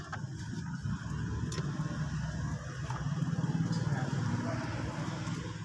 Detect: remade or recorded recorded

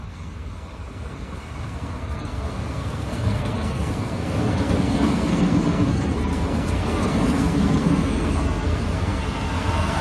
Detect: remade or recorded remade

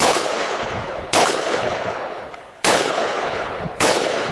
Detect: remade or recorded remade